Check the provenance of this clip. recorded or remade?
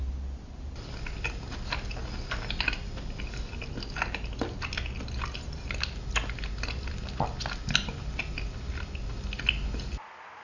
recorded